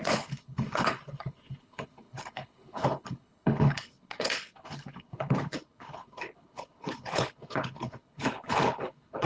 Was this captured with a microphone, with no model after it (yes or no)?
no